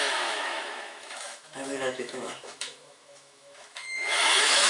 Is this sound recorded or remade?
remade